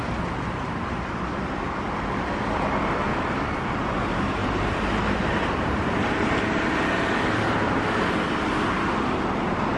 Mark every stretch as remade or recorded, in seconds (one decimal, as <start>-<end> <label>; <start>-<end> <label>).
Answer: 0.0-3.1 recorded; 3.1-3.7 remade; 3.7-4.4 recorded; 4.4-7.4 remade; 7.4-9.8 recorded